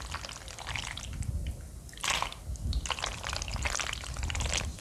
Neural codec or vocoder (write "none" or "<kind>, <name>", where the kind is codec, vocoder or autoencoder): none